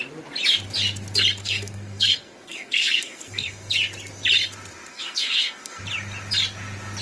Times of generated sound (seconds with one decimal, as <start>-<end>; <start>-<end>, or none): 1.4-3.7; 4.9-5.8